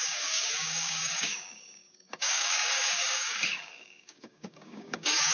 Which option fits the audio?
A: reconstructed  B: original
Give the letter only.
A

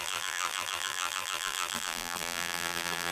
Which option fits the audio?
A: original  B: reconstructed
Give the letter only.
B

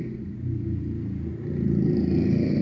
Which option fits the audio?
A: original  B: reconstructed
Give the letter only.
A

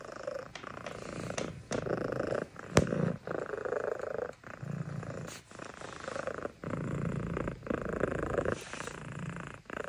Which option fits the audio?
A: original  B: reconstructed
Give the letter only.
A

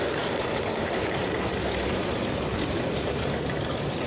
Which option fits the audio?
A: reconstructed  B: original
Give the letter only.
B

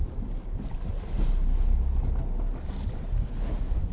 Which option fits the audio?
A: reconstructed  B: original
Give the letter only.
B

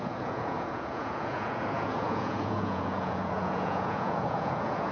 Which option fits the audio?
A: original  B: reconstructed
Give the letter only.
B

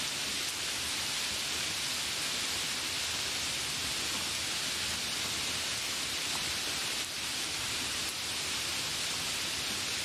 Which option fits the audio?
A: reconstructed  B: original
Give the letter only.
B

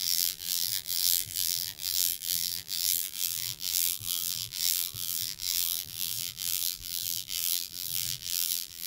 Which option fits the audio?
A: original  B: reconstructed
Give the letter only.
B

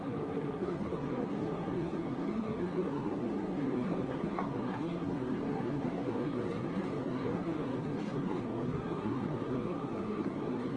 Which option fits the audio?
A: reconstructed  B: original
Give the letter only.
A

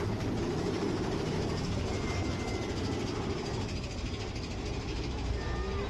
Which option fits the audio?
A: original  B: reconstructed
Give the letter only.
A